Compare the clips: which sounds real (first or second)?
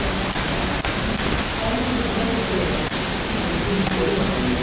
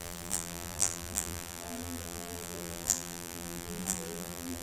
first